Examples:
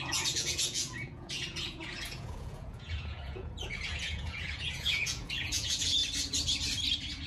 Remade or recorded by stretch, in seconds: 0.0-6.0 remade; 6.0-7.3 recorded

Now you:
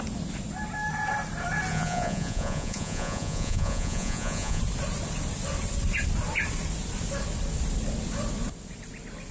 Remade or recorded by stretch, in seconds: 0.0-1.7 recorded; 1.7-4.6 remade; 4.6-9.3 recorded

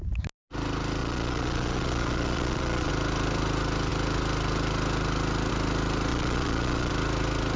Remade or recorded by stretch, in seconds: 0.0-1.0 recorded; 1.0-2.9 remade; 2.9-6.1 recorded; 6.1-6.9 remade; 6.9-7.6 recorded

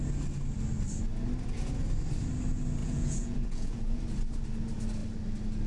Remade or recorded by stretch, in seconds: 0.0-2.8 recorded; 2.8-4.0 remade; 4.0-5.7 recorded

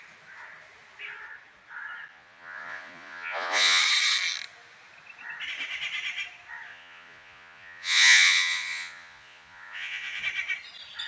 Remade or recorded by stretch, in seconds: 0.0-2.1 recorded; 2.1-3.8 remade; 3.8-6.7 recorded; 6.7-10.2 remade; 10.2-11.1 recorded

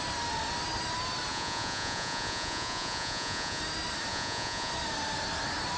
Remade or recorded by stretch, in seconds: 0.0-1.3 recorded; 1.3-3.6 remade; 3.6-4.1 recorded; 4.1-4.7 remade; 4.7-5.8 recorded

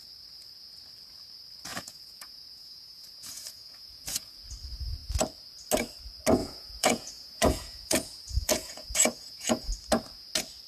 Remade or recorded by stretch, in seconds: 0.0-1.7 recorded; 1.7-4.4 remade; 4.4-6.4 recorded; 6.4-9.7 remade; 9.7-10.7 recorded